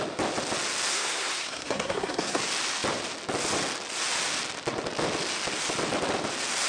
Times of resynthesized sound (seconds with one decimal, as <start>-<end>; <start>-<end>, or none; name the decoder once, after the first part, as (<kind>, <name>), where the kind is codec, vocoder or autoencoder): 0.9-2.4 (codec, SNAC)